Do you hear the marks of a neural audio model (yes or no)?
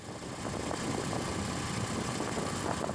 no